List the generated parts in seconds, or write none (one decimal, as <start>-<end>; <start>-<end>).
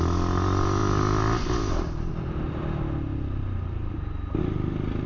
none